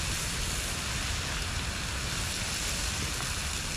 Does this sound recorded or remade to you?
recorded